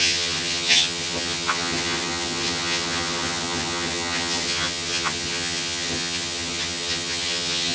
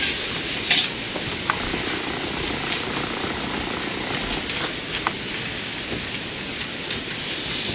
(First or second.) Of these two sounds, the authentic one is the second